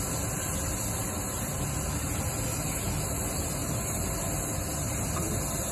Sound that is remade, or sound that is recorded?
recorded